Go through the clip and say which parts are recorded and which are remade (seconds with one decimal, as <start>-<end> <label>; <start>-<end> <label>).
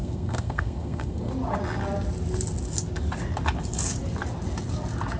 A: 0.0-1.3 remade; 1.3-5.2 recorded